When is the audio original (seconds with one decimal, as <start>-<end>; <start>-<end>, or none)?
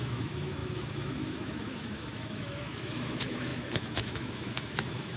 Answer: none